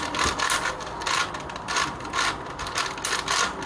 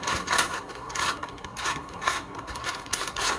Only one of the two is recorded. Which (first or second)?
first